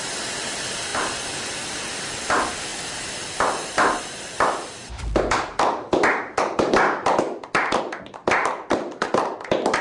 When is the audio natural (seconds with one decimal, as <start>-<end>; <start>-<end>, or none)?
0.0-0.9; 2.2-2.7; 7.8-8.2; 9.4-9.8